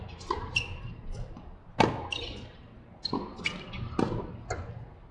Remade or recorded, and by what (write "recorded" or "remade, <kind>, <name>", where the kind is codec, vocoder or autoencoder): recorded